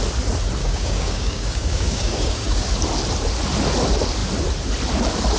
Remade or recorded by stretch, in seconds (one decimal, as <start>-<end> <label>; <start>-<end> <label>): 0.0-0.6 recorded; 0.6-2.7 remade; 2.7-5.4 recorded